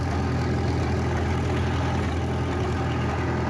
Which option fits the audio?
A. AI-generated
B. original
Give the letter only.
B